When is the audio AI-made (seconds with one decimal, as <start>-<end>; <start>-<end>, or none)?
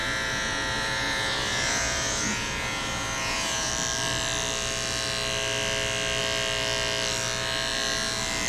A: 0.0-3.7